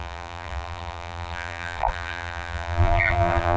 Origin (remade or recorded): remade